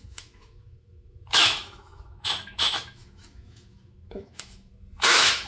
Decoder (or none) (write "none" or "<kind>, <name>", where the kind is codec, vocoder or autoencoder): autoencoder, DAC-VAE